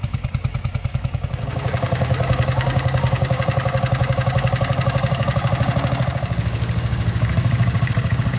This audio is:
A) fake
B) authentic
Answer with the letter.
A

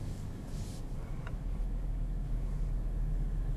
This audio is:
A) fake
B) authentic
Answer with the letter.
A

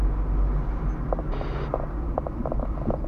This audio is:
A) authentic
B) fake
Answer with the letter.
A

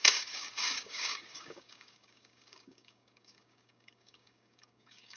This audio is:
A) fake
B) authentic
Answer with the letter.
A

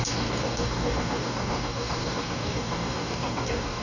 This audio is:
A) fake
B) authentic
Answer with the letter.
A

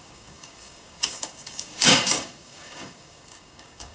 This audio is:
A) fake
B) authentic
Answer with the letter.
A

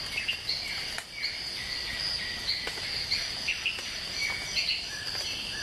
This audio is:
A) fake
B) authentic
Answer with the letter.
B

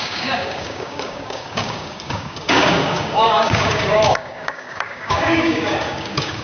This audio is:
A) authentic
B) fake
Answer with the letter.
B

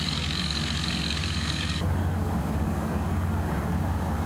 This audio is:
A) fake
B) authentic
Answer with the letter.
A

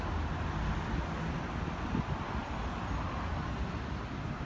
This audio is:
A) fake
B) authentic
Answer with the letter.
B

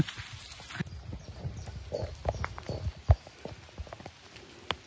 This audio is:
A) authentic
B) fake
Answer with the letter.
A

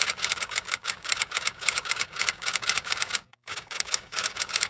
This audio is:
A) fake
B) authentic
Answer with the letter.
A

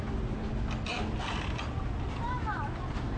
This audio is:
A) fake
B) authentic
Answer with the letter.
B